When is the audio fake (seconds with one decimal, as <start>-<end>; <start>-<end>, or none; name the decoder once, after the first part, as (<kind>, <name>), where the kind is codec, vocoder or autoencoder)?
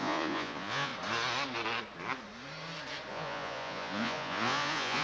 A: 0.0-0.9 (vocoder, Vocos); 3.1-5.0